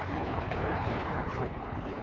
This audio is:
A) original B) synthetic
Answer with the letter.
B